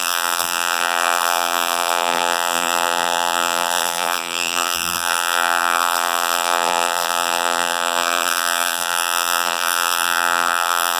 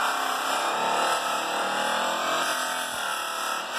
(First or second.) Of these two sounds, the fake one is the first